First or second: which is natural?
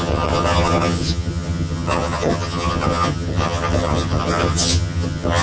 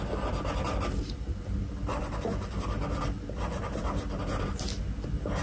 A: second